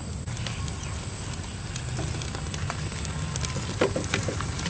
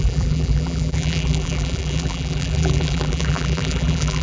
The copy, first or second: second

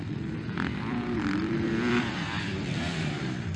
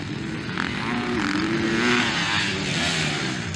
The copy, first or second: first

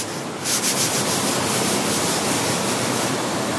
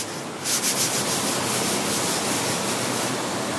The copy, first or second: first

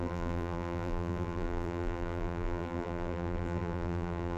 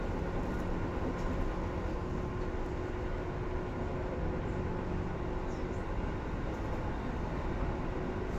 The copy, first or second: first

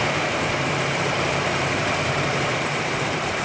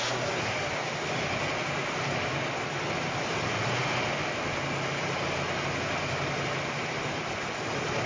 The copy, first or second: first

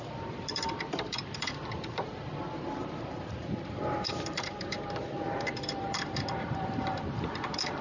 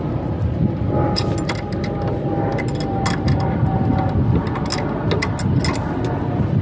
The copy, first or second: first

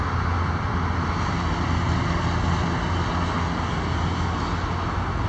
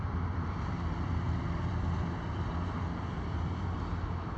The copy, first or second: second